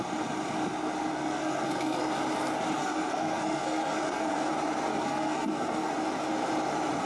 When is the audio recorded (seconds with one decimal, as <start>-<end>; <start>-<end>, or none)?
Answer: 0.0-1.0; 2.0-2.8; 4.5-4.9; 5.9-7.1